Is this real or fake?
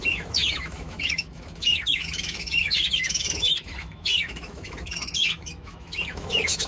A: fake